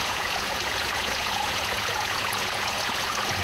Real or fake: fake